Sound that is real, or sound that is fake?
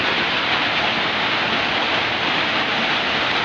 real